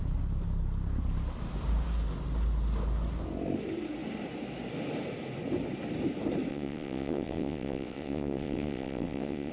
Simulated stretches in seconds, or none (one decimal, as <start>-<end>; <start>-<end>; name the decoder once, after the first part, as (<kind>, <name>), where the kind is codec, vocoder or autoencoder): 6.5-9.5 (vocoder, WaveNeXt)